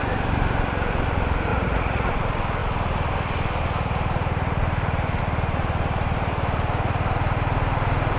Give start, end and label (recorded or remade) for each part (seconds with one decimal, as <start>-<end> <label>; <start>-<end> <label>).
0.0-1.5 recorded; 1.5-2.1 remade; 2.1-8.2 recorded